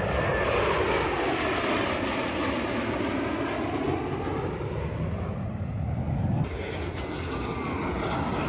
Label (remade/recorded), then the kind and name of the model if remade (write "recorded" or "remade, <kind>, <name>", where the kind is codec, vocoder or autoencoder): recorded